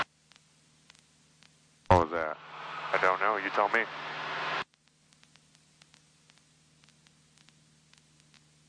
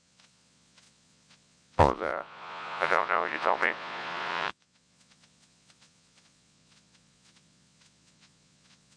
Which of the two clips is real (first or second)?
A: first